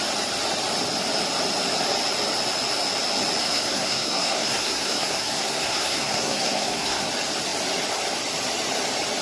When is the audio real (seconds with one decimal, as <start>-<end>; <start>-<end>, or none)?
0.0-3.4; 7.1-9.2